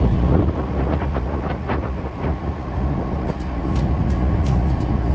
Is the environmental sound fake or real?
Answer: fake